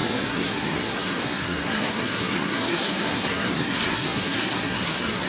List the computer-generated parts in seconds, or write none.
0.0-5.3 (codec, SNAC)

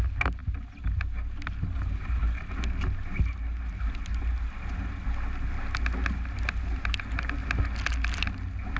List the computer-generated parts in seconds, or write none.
none

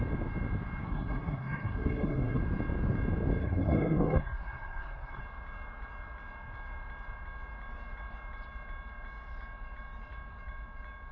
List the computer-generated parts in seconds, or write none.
0.8-2.4 (codec, SNAC); 3.4-5.2

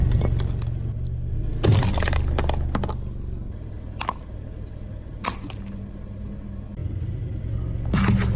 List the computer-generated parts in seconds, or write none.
none

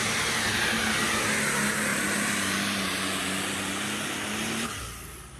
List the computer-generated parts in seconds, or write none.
none

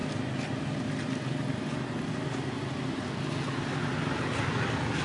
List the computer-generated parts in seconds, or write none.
none